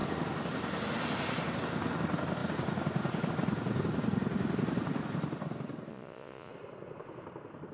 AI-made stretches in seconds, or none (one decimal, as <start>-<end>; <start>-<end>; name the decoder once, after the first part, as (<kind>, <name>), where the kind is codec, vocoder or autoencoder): 5.9-6.5 (vocoder, Vocos)

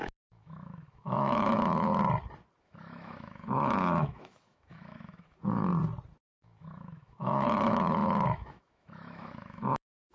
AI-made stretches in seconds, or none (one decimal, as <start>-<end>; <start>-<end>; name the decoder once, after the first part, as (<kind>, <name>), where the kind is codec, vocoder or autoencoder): 0.0-1.9 (autoencoder, DAC-VAE); 2.6-5.7; 6.3-10.1

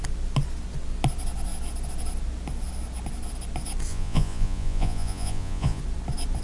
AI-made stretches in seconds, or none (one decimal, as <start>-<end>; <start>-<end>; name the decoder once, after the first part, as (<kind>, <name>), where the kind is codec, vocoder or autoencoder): 3.9-5.8 (vocoder, Vocos)

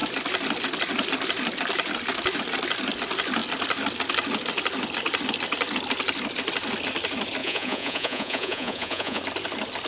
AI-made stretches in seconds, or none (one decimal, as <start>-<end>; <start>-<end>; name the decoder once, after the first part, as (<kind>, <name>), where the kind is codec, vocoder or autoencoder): 7.4-9.2 (vocoder, Vocos)

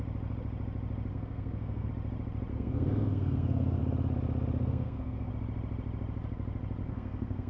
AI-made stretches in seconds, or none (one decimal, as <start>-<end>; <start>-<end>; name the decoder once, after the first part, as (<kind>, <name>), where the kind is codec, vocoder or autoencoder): 1.1-1.9 (codec, SNAC); 2.5-3.8; 4.6-5.3; 6.8-7.5

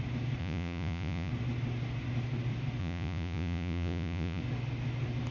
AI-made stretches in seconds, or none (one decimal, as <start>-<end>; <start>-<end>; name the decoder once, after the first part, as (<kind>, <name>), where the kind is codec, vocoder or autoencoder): 0.4-1.3 (vocoder, Vocos); 2.8-4.4